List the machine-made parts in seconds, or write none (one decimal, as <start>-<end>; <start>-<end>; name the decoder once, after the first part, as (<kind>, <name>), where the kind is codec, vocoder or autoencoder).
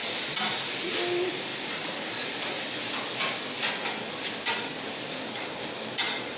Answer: none